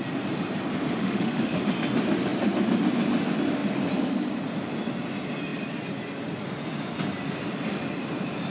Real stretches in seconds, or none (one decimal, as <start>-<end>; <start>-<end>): 0.0-1.0; 1.6-8.5

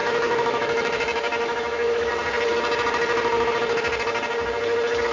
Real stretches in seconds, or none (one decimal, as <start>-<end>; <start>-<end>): 2.1-5.1

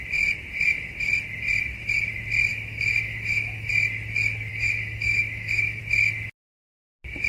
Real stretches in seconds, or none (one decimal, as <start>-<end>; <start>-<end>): 0.0-2.5; 3.7-4.5; 5.8-7.3

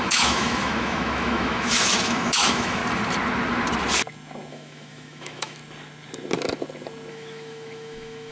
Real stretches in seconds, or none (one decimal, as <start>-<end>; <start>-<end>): 2.8-4.5; 5.6-7.1